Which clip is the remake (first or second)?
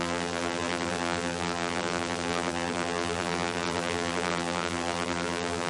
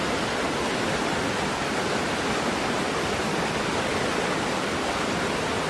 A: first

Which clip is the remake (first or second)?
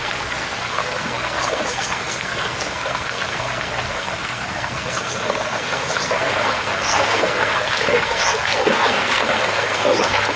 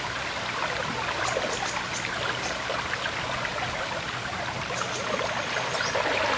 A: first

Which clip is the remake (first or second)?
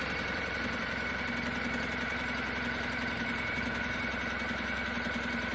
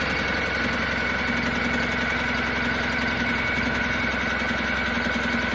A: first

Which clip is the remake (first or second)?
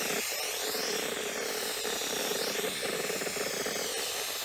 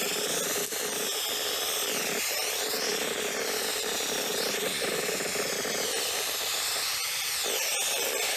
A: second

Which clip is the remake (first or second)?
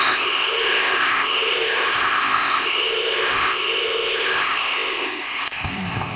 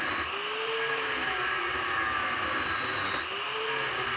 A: first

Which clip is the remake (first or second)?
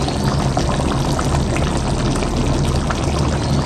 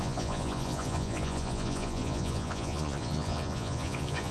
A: second